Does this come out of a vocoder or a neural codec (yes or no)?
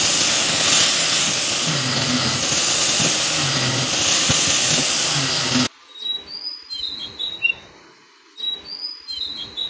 no